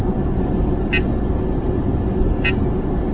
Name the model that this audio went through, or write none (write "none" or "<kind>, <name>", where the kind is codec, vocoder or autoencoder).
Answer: none